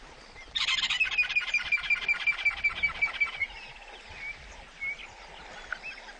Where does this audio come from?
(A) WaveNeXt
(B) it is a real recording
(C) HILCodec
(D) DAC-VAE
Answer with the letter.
B